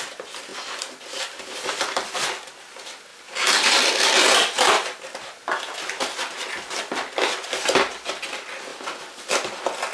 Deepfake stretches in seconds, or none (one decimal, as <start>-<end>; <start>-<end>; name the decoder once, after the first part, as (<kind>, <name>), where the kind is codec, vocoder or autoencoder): 0.5-2.1 (vocoder, BigVGAN v2); 3.1-5.0; 8.7-9.5